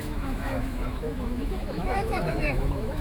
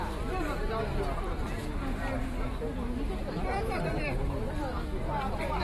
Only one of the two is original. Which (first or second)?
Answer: second